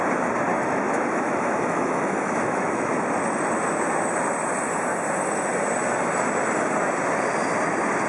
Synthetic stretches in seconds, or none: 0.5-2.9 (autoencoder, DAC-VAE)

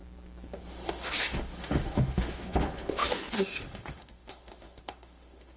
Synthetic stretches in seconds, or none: 0.7-5.6 (autoencoder, DAC-VAE)

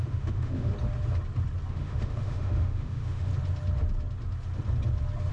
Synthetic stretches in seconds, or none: 0.0-0.7 (autoencoder, DAC-VAE); 1.7-3.3

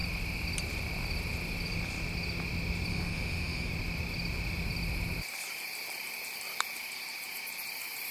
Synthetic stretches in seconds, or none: 2.9-3.7 (autoencoder, DAC-VAE)

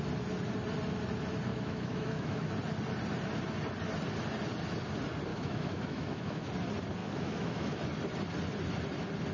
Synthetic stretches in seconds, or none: 1.5-2.5 (autoencoder, DAC-VAE); 5.3-6.5; 7.0-7.8

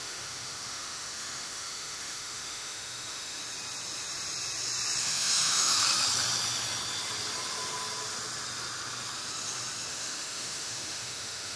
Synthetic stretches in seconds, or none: 0.0-3.4 (autoencoder, DAC-VAE); 5.0-5.8; 9.9-11.6

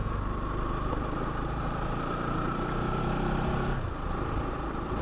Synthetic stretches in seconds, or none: none